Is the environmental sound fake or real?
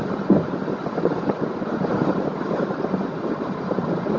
real